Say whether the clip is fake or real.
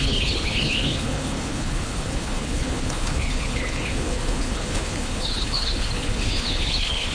fake